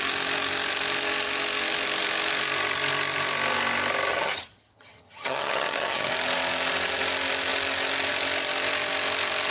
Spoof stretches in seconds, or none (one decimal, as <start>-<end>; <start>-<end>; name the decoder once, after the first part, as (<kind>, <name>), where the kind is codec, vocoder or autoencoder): 4.1-6.1 (vocoder, HiFi-GAN)